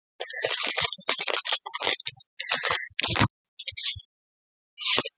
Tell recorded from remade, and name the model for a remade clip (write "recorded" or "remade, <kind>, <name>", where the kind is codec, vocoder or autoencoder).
recorded